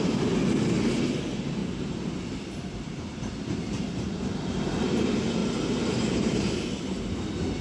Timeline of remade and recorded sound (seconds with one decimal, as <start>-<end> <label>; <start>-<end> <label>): 0.0-1.6 recorded; 1.6-2.7 remade; 2.7-3.3 recorded; 3.3-4.6 remade; 4.6-5.4 recorded; 5.4-6.8 remade; 6.8-7.6 recorded